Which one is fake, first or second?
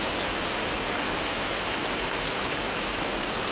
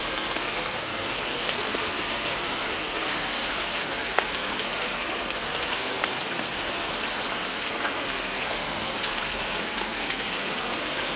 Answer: second